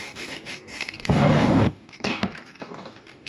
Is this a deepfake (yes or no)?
yes